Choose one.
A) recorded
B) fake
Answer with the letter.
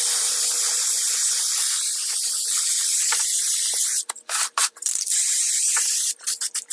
B